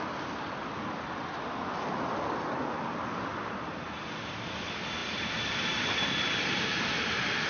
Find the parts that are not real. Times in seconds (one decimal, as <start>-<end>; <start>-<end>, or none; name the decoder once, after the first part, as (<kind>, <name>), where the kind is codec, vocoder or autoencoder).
none